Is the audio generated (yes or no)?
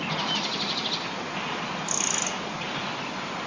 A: no